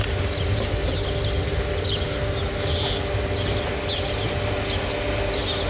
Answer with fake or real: real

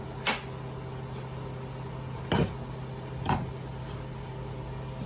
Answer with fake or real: real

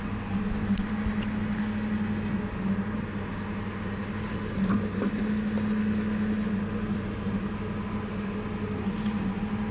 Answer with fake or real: real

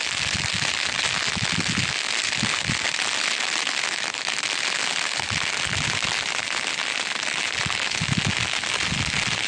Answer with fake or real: real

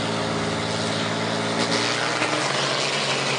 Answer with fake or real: real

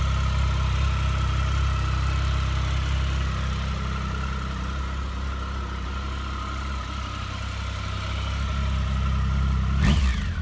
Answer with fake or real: real